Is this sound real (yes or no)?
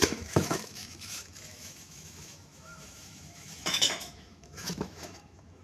no